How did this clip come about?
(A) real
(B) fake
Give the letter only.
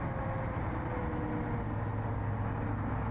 A